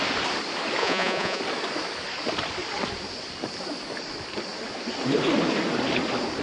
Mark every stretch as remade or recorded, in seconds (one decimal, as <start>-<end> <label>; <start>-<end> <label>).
0.0-0.8 recorded; 0.8-1.4 remade; 1.4-6.4 recorded

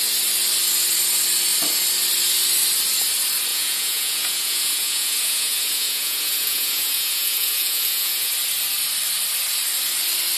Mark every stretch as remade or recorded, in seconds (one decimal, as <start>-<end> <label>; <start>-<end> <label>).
0.0-3.5 recorded; 3.5-8.3 remade; 8.3-10.4 recorded

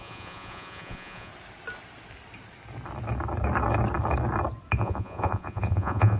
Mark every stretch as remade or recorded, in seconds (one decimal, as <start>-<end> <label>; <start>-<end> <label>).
0.0-1.3 remade; 1.3-4.8 recorded; 4.8-6.2 remade

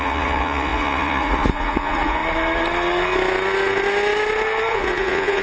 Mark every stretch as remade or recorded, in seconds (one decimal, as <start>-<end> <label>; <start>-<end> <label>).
0.0-2.2 remade; 2.2-4.7 recorded; 4.7-5.4 remade

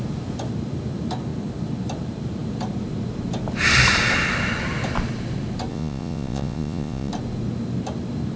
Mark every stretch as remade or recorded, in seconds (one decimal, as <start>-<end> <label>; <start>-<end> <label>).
0.0-5.7 recorded; 5.7-7.1 remade; 7.1-8.4 recorded

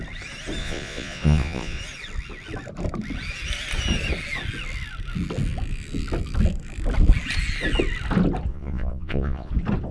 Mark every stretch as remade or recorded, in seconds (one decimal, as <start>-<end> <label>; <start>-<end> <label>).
0.0-0.6 recorded; 0.6-1.8 remade; 1.8-8.5 recorded; 8.5-9.5 remade; 9.5-9.9 recorded

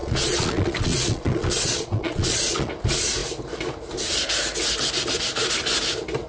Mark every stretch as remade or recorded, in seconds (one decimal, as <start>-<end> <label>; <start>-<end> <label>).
0.0-2.7 remade; 2.7-6.3 recorded